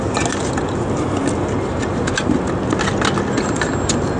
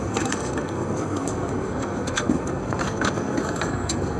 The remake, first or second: second